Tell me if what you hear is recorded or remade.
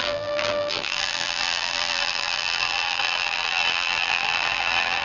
remade